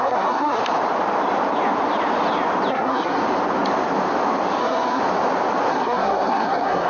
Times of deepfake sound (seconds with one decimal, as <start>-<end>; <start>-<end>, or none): 0.0-0.6; 2.7-3.2; 4.6-5.0; 5.7-6.9